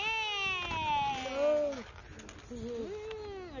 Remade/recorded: recorded